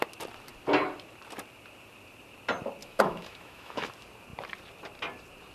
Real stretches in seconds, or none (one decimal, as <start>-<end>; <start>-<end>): 0.0-2.8; 3.9-5.5